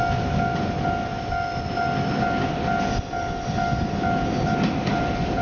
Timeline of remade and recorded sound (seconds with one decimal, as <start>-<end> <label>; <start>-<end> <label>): 0.0-5.4 recorded